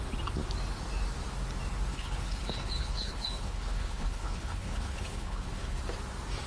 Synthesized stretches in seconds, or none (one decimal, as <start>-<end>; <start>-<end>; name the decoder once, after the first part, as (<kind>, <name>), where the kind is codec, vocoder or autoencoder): 1.9-5.8 (codec, HILCodec)